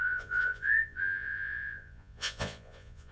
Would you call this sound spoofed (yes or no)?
yes